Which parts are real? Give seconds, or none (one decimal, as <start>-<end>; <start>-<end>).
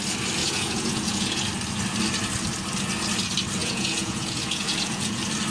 0.0-0.4; 1.4-3.6; 5.1-5.5